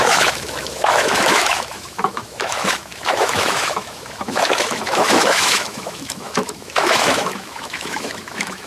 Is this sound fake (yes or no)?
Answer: yes